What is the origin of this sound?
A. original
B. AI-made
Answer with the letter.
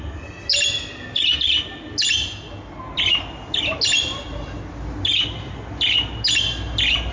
A